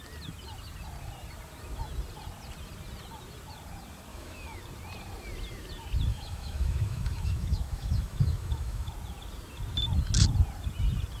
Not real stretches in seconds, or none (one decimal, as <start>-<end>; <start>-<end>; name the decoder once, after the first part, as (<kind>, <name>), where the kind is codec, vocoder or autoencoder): 4.1-4.6 (autoencoder, DAC-VAE); 6.1-8.9